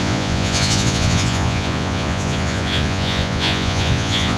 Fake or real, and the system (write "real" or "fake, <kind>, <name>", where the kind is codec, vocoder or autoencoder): fake, vocoder, Vocos